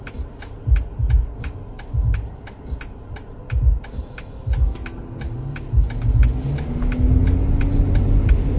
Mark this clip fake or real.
real